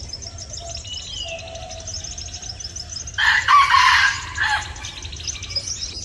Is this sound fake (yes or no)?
no